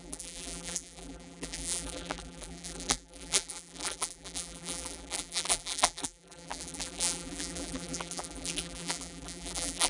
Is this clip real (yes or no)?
no